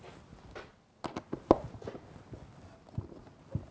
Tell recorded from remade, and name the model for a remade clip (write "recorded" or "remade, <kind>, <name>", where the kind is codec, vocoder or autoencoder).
recorded